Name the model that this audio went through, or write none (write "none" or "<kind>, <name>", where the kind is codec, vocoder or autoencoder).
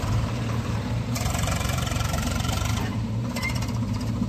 vocoder, BigVGAN v2